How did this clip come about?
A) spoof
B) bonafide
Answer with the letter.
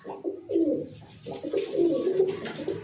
B